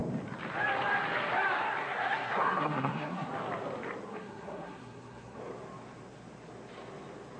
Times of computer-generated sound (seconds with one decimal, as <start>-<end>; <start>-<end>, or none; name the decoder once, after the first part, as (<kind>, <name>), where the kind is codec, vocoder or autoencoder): 1.8-3.3 (codec, SNAC); 4.1-5.4